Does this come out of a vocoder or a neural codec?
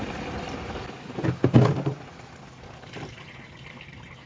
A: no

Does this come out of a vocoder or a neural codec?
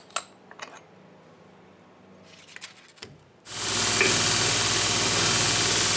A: no